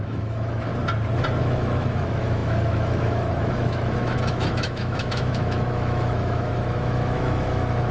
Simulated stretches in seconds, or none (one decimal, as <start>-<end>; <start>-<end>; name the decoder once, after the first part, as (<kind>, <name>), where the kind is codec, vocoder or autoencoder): 0.0-0.7 (autoencoder, DAC-VAE); 1.4-7.9